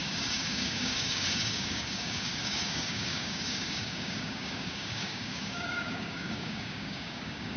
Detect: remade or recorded remade